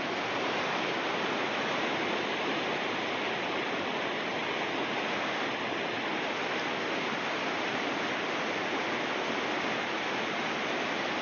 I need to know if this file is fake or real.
real